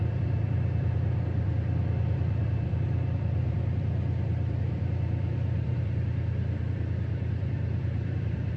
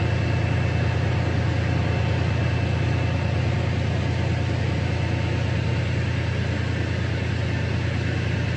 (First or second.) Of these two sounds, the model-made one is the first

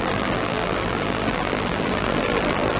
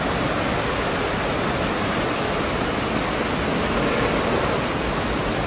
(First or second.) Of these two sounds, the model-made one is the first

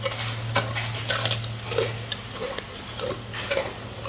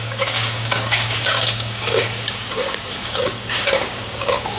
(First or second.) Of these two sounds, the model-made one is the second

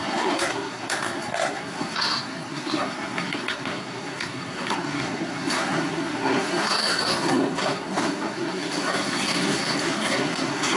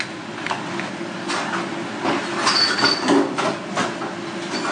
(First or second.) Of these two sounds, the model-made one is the first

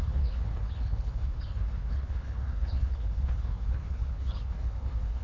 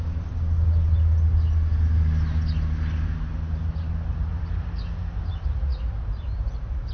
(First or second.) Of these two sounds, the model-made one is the first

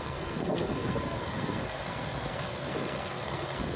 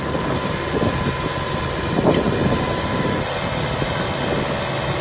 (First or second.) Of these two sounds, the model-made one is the first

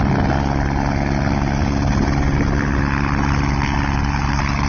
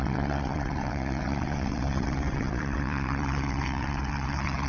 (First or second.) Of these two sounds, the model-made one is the second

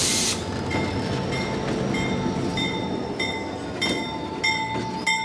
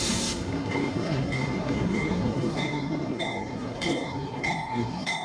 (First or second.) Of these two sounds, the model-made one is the second